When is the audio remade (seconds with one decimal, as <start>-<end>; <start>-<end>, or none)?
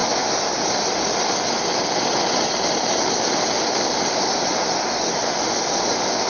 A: none